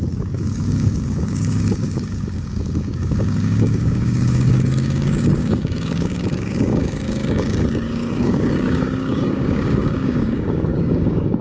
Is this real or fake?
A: fake